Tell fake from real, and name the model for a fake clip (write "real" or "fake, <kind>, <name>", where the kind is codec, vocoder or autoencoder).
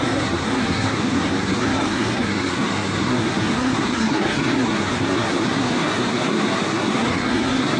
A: fake, codec, SNAC